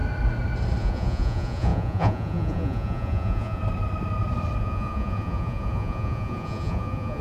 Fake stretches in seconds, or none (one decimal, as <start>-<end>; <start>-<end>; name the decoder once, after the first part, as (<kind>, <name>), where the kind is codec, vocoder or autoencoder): 0.8-3.6 (vocoder, Vocos); 4.6-7.2